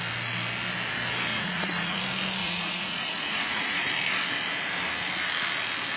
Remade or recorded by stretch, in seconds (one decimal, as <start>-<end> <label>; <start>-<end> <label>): 0.0-1.3 recorded; 1.3-2.0 remade; 2.0-2.4 recorded; 2.4-3.9 remade; 3.9-6.0 recorded